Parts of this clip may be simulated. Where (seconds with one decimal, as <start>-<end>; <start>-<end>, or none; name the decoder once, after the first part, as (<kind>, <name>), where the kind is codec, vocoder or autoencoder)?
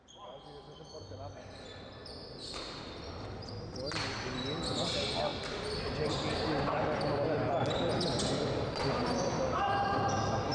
none